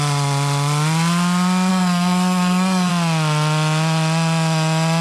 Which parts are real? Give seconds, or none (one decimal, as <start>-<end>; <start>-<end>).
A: 0.0-1.7; 2.9-5.0